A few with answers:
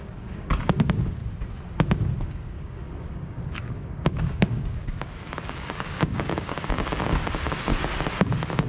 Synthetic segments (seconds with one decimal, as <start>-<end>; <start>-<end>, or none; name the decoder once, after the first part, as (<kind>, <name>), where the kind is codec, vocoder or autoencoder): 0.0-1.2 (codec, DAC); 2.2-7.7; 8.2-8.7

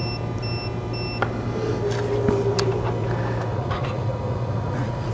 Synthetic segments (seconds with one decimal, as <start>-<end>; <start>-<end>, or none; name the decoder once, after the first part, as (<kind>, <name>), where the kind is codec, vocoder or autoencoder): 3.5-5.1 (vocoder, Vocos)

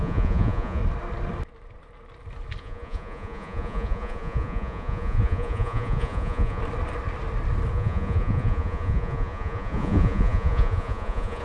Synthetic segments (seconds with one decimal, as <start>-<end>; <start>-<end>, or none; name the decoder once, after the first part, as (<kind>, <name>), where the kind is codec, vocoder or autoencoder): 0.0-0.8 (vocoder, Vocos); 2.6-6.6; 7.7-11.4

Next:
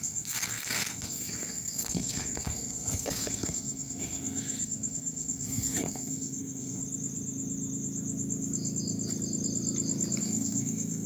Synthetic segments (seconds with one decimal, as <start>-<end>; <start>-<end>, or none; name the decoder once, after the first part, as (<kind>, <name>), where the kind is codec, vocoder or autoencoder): 0.0-6.8 (codec, SNAC); 10.2-11.1